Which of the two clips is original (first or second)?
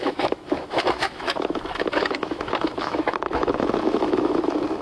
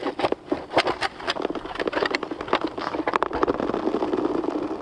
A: second